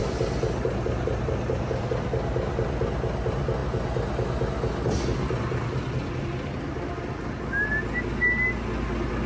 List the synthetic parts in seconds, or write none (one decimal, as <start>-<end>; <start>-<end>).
none